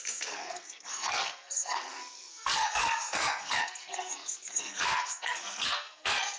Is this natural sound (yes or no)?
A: no